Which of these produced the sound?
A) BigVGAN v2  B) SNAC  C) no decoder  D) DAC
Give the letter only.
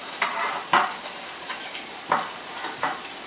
A